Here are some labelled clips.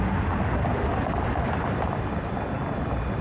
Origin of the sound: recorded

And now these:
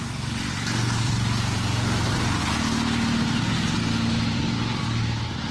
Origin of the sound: recorded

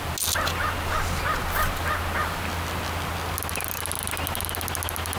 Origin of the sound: recorded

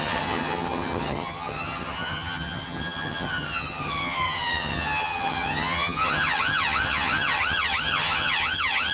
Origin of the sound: remade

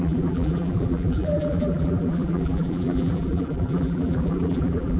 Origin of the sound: remade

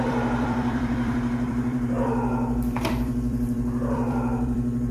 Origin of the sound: remade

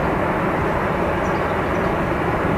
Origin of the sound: recorded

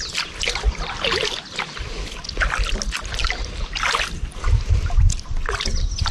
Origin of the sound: recorded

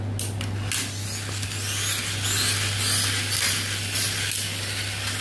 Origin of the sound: recorded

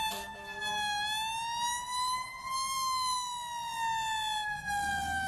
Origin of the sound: recorded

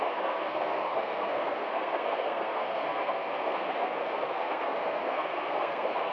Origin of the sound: remade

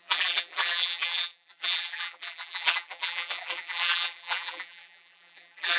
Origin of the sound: remade